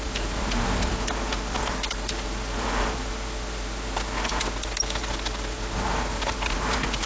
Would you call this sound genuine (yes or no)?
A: yes